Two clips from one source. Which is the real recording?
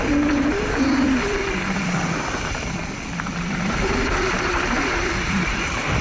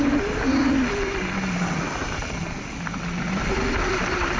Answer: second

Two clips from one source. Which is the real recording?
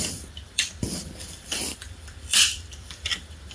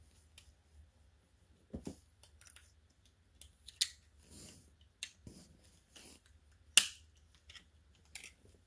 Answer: second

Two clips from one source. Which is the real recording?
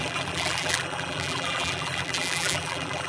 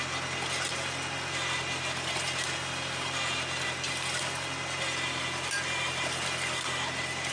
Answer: second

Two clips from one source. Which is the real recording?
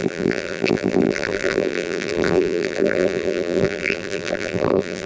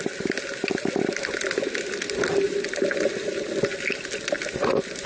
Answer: second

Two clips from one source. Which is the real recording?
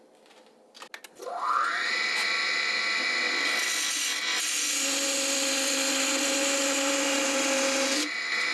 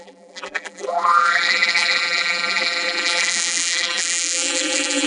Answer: first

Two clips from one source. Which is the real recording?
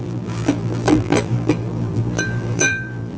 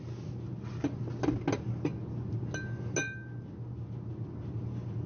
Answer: second